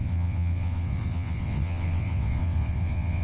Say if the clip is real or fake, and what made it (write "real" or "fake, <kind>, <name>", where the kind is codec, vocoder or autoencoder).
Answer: fake, vocoder, WaveNeXt